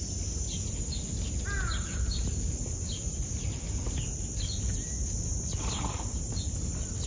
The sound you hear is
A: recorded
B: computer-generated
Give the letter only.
A